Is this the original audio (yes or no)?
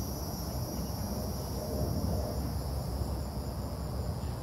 yes